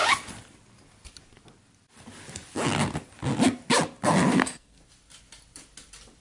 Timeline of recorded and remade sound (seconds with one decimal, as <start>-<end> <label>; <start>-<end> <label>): 0.0-4.3 recorded; 4.3-4.8 remade; 4.8-6.2 recorded